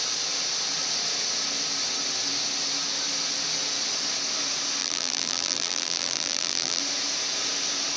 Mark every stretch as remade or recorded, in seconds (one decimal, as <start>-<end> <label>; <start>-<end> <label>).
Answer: 0.0-4.8 recorded; 4.8-6.8 remade; 6.8-8.0 recorded